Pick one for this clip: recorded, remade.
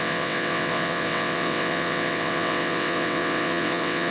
remade